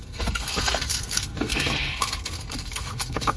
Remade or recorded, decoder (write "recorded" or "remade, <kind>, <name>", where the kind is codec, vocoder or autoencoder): remade, codec, SNAC